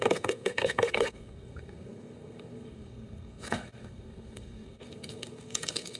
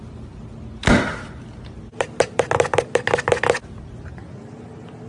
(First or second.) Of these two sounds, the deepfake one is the first